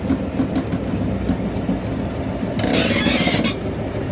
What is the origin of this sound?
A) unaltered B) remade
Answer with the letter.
A